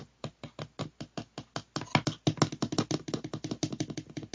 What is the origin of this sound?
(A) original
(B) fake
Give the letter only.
A